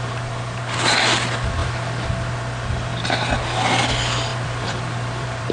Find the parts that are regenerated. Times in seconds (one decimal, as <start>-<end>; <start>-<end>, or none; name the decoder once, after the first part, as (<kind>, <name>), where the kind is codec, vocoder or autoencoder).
4.3-5.5 (vocoder, BigVGAN v2)